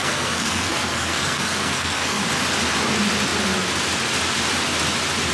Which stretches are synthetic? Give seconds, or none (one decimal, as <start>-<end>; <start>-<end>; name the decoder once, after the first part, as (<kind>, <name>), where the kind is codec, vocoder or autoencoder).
0.0-2.2 (codec, SNAC)